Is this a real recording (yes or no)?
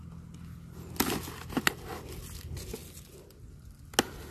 yes